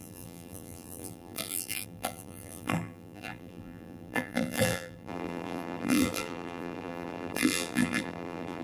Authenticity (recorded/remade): remade